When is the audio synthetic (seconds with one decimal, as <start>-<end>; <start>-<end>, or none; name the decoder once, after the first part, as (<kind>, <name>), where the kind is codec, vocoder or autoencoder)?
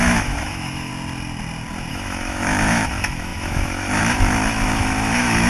0.0-0.9 (autoencoder, DAC-VAE); 1.9-5.5